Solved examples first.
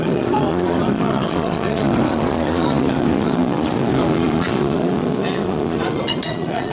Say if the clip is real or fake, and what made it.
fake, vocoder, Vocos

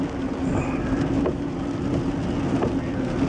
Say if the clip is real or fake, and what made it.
real